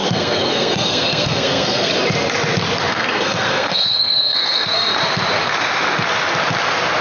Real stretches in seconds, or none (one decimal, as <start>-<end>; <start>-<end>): 1.9-2.9; 4.9-7.0